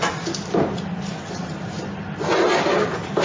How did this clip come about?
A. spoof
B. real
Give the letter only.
B